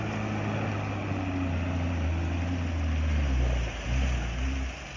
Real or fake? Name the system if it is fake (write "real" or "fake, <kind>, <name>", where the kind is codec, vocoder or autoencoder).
real